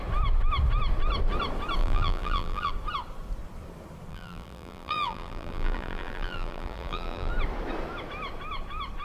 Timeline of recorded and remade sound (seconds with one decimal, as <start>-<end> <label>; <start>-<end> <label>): 0.0-1.8 recorded; 1.8-2.7 remade; 2.7-4.1 recorded; 4.1-7.3 remade; 7.3-9.0 recorded

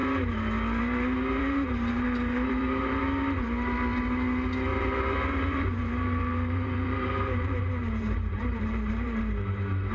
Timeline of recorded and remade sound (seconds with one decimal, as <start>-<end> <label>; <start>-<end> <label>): 0.0-1.4 recorded; 1.4-3.0 remade; 3.0-4.7 recorded; 4.7-9.2 remade; 9.2-9.9 recorded

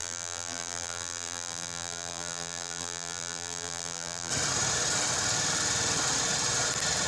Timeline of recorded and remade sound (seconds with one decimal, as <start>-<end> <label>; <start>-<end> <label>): 0.0-4.3 remade; 4.3-7.1 recorded

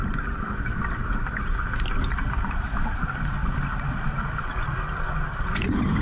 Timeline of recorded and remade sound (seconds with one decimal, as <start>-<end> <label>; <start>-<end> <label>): 0.0-6.0 recorded

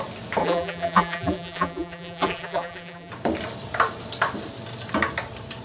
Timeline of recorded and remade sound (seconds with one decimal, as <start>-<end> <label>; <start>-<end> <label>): 0.0-0.4 recorded; 0.4-3.1 remade; 3.1-5.6 recorded